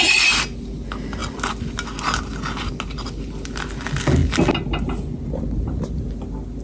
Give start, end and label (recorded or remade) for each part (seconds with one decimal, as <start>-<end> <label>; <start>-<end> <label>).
0.0-6.6 recorded